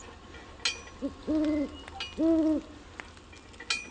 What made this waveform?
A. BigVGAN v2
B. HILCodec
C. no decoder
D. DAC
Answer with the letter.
C